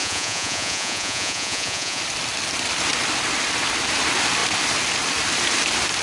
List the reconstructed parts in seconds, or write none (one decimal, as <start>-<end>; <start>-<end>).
0.0-2.0